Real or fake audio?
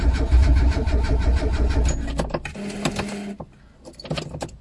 real